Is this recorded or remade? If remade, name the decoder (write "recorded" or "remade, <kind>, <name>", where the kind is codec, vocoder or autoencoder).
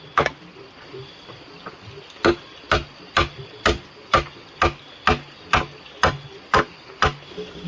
recorded